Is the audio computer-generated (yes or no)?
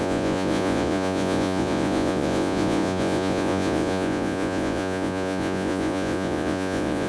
yes